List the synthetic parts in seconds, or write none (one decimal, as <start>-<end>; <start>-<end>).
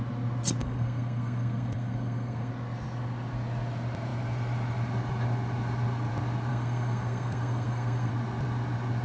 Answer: 0.6-2.5; 6.5-8.1